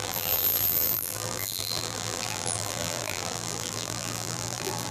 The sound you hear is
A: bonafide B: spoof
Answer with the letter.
B